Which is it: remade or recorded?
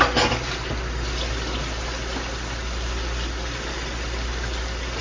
recorded